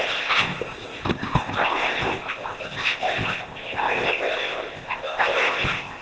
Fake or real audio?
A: fake